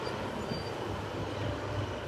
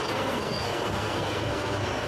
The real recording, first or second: first